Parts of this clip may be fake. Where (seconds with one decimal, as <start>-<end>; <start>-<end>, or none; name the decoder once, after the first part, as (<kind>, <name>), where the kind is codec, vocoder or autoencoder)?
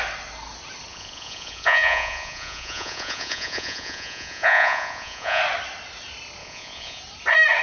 0.9-5.4 (vocoder, Vocos); 6.4-7.0